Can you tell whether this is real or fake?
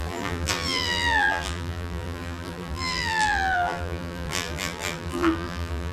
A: fake